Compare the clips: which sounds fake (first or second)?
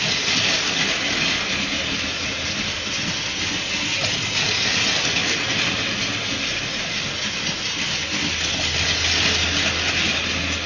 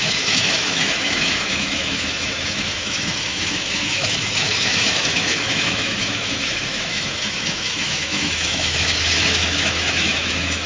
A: second